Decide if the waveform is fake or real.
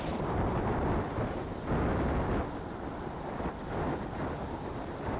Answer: real